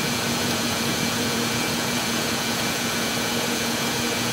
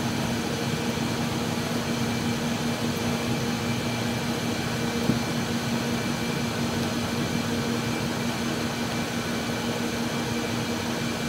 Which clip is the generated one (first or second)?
first